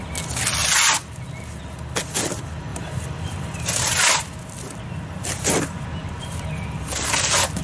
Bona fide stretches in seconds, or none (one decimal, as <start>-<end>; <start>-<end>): 0.0-2.7; 4.8-7.6